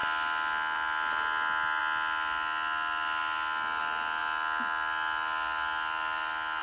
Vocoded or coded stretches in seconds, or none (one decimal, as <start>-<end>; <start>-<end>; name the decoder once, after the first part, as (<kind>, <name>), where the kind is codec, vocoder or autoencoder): none